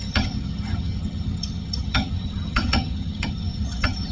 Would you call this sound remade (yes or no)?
yes